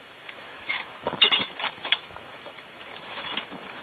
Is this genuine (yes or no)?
no